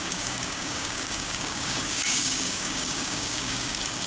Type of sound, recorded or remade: remade